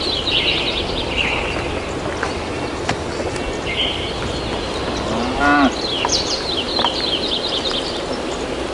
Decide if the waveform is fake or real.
real